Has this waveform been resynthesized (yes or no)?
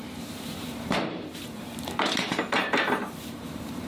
yes